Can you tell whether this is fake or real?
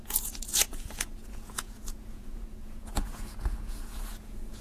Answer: fake